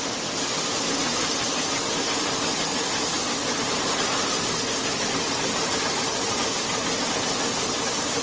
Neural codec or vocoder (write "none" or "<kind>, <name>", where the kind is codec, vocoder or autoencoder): none